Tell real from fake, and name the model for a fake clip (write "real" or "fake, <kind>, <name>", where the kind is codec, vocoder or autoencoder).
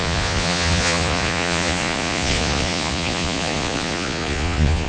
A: fake, vocoder, Vocos